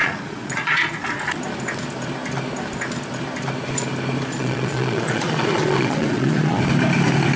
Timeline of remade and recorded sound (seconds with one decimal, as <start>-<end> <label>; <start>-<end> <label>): 0.0-1.0 remade; 1.0-4.3 recorded; 4.3-6.6 remade; 6.6-7.4 recorded